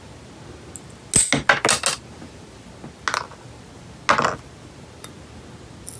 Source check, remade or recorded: recorded